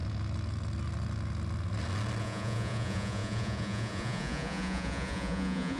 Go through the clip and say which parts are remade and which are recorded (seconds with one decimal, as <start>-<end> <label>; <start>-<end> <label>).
0.0-2.2 recorded; 2.2-5.8 remade